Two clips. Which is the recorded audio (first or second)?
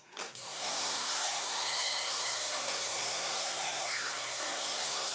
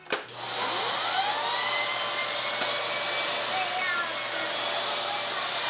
second